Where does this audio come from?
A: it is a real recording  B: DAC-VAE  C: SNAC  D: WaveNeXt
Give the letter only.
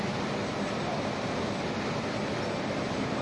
A